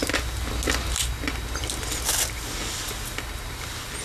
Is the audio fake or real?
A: real